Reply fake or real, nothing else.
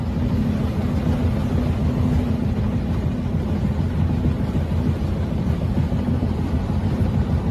real